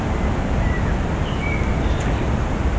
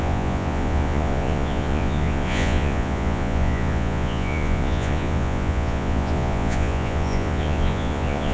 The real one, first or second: first